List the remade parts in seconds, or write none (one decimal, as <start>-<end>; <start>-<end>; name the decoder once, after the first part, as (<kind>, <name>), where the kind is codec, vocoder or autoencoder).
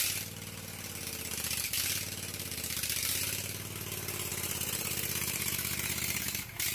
4.3-6.2 (vocoder, BigVGAN v2)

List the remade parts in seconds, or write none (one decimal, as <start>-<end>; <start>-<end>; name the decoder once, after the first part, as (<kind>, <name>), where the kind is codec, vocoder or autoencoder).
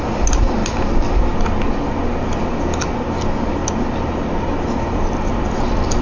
none